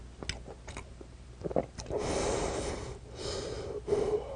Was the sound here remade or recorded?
recorded